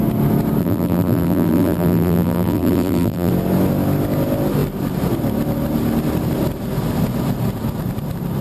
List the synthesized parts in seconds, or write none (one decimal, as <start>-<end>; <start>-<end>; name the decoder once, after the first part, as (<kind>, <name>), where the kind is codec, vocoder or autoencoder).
0.6-3.3 (vocoder, BigVGAN v2)